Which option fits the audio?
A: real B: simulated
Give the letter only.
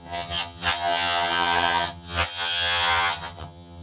B